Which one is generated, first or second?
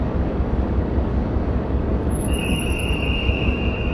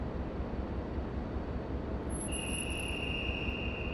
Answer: first